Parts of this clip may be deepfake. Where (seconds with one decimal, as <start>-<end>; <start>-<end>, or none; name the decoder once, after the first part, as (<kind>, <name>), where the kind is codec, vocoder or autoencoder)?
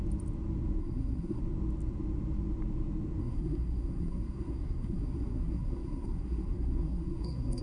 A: 0.8-1.4 (codec, SNAC); 3.2-7.6